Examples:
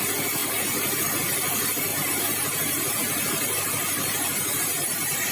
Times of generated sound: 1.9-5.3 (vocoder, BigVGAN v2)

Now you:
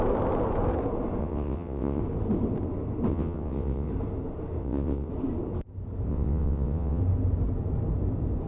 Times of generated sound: 1.2-2.0 (vocoder, WaveNeXt); 3.1-3.9; 4.6-5.1; 6.1-7.0